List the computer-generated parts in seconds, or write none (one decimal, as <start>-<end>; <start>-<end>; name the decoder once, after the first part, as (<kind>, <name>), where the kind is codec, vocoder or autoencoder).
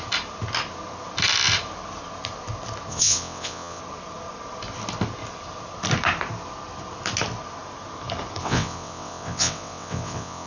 2.9-3.8 (vocoder, WaveNeXt); 8.4-10.5